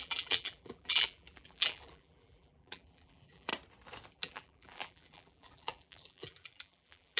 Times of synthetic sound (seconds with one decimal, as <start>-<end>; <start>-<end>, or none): 0.0-3.5; 4.1-7.2